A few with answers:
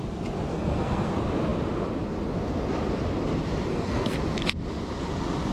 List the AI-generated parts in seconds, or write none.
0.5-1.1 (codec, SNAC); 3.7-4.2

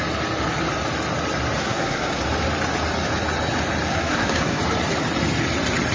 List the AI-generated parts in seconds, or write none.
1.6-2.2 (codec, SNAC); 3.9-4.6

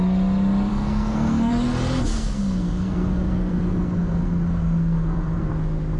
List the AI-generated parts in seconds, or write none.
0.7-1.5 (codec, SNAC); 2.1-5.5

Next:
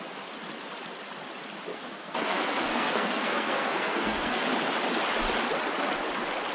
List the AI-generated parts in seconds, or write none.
1.7-4.4 (codec, SNAC)